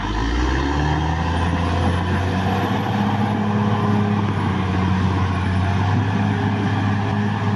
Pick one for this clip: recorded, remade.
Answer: recorded